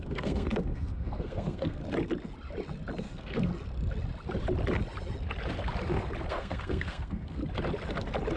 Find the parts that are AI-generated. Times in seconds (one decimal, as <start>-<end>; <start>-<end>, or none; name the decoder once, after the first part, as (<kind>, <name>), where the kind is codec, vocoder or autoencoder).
0.0-1.8 (codec, SNAC); 3.0-3.5; 6.3-7.4